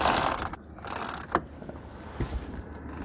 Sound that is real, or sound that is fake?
real